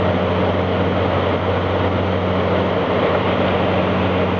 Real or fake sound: real